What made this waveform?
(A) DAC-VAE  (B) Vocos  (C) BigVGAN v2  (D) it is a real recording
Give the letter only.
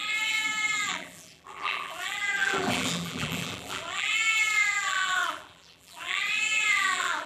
C